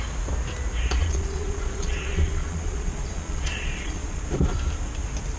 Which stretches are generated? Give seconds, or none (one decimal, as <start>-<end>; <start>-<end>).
1.0-4.2